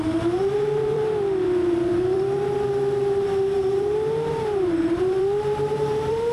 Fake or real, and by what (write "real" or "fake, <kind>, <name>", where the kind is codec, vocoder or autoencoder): fake, vocoder, BigVGAN v2